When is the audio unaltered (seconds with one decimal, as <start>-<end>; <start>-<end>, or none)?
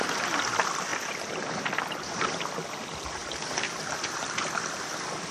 0.0-5.3